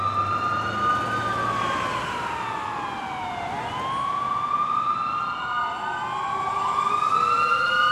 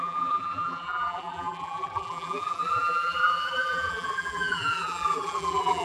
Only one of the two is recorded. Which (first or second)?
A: first